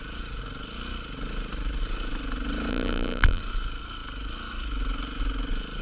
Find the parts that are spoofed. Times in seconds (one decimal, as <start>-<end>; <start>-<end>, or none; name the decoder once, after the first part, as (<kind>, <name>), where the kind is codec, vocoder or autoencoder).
2.7-3.4 (vocoder, BigVGAN v2)